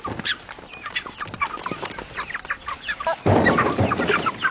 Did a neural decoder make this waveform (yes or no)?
no